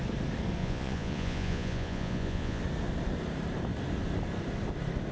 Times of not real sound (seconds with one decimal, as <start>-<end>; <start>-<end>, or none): 0.6-2.6